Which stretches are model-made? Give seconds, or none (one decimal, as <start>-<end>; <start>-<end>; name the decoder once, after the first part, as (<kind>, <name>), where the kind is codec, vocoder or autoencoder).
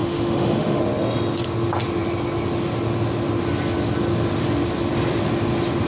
0.0-0.8 (autoencoder, DAC-VAE)